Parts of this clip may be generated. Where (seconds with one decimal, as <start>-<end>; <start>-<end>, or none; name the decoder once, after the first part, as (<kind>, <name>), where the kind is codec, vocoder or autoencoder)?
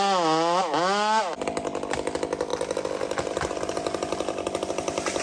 none